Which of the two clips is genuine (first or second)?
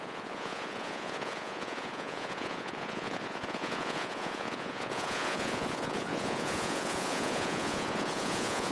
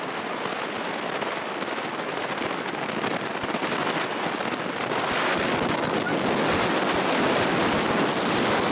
second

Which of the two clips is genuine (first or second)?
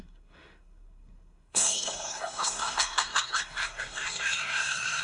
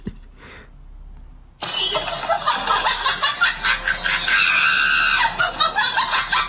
second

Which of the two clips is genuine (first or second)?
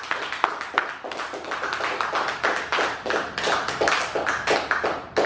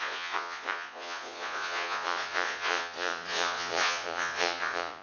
first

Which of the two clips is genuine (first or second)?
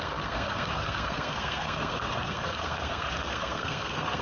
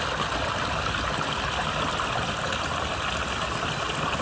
second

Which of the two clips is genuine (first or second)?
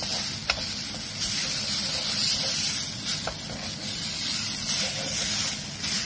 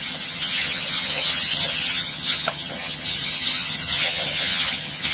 first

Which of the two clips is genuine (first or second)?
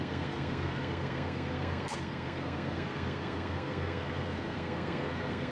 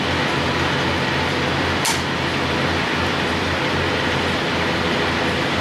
second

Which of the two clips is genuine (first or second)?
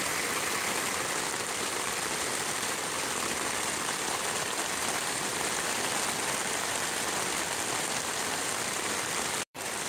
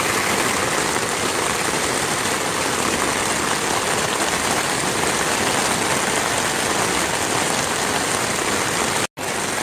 second